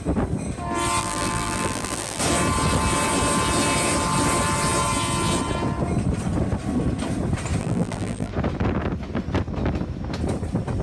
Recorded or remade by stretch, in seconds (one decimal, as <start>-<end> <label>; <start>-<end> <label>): 0.0-1.0 recorded; 1.0-2.2 remade; 2.2-7.6 recorded; 7.6-8.3 remade; 8.3-10.8 recorded